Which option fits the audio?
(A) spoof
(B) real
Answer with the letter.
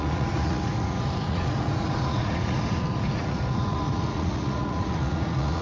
A